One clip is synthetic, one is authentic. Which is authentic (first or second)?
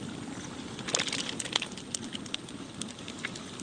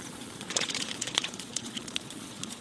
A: first